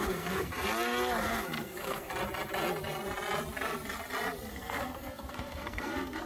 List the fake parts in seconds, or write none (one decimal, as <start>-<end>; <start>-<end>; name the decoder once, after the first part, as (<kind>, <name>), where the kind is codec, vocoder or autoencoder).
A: 0.0-0.5 (codec, SNAC); 1.2-2.1; 4.5-6.3